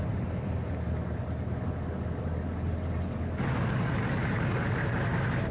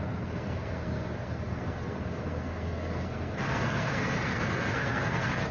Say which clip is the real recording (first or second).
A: first